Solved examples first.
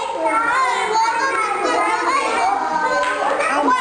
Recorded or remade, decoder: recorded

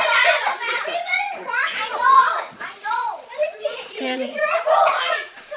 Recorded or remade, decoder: remade, vocoder, Vocos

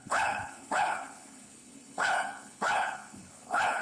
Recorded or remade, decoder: remade, codec, HILCodec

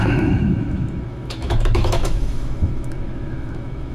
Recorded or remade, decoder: remade, autoencoder, DAC-VAE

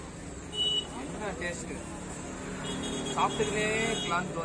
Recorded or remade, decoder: recorded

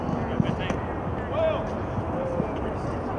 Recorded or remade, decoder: recorded